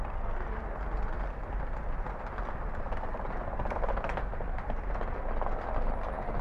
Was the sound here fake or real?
real